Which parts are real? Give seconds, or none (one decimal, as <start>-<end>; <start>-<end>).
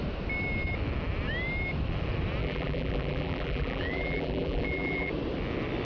0.0-2.4; 5.1-5.8